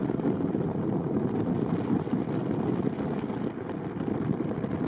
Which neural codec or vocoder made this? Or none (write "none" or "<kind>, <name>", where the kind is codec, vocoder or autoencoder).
none